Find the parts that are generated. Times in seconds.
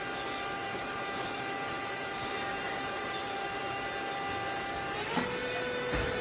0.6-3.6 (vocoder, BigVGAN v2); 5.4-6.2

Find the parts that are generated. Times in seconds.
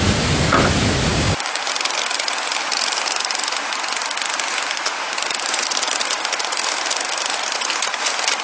1.1-1.6 (codec, DAC)